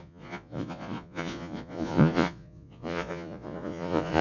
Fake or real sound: fake